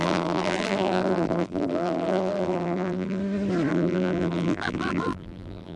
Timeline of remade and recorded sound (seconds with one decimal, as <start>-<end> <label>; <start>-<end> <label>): 0.0-3.2 remade; 3.2-3.7 recorded; 3.7-5.8 remade